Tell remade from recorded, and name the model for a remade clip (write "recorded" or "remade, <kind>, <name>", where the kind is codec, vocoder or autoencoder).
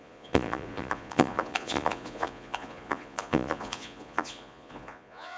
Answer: remade, vocoder, Vocos